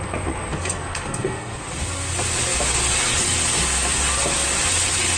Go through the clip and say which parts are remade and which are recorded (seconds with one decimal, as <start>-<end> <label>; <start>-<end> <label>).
0.0-0.5 recorded; 0.5-1.6 remade; 1.6-5.2 recorded